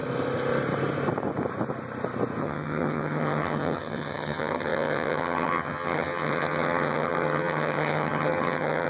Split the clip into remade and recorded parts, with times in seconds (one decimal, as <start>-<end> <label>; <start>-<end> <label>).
0.0-2.4 recorded; 2.4-8.9 remade